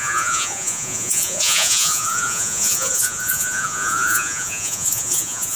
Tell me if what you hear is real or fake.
fake